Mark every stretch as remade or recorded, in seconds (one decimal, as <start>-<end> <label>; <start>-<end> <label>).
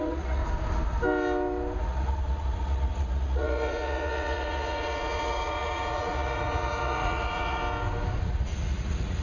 0.0-0.4 remade; 0.4-1.8 recorded; 1.8-7.6 remade; 7.6-8.2 recorded; 8.2-9.2 remade